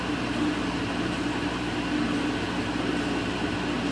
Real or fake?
real